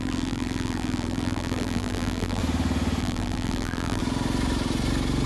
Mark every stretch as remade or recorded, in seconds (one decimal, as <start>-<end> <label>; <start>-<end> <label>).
0.0-2.4 remade; 2.4-3.0 recorded; 3.0-4.0 remade; 4.0-5.3 recorded